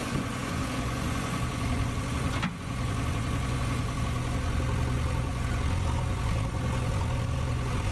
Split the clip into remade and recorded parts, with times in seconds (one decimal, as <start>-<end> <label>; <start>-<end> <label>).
0.0-7.9 remade